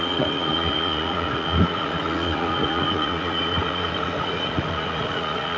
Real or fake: fake